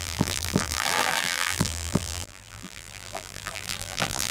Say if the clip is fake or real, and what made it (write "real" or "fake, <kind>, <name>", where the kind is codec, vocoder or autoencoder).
fake, vocoder, BigVGAN v2